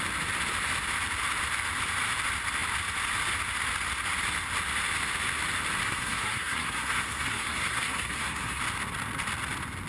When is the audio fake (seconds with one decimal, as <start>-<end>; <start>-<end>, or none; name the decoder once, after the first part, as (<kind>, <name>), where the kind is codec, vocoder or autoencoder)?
5.8-8.6 (codec, SNAC)